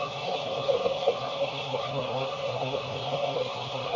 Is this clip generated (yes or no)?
yes